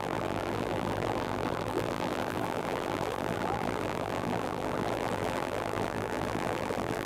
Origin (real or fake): fake